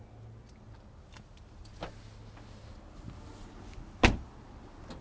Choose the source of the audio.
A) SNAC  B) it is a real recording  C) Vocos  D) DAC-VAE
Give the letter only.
B